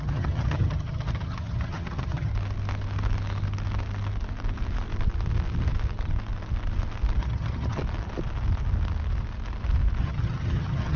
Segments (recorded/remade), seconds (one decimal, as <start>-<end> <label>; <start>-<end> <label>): 0.0-2.3 remade; 2.3-7.2 recorded; 7.2-7.8 remade; 7.8-10.0 recorded; 10.0-11.0 remade

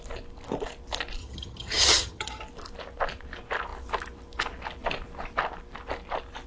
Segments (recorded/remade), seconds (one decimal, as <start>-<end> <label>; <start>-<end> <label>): 0.0-1.2 recorded; 1.2-2.4 remade; 2.4-6.5 recorded